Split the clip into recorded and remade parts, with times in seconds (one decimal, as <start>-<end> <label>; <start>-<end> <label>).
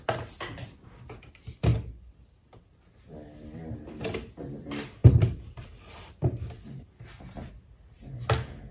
0.0-1.7 recorded; 1.7-4.0 remade; 4.0-5.0 recorded; 5.0-6.1 remade; 6.1-8.7 recorded